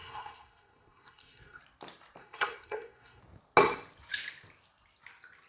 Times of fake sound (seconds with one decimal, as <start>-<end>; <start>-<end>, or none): 0.0-1.6; 2.2-3.2